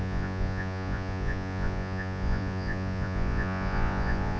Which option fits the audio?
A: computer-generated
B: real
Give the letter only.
A